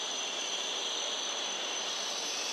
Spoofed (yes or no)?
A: no